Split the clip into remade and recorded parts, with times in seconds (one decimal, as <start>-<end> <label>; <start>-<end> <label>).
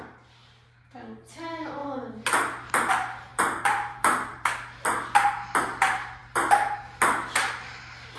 0.0-3.3 recorded; 3.3-4.5 remade; 4.5-6.2 recorded; 6.2-6.8 remade; 6.8-8.2 recorded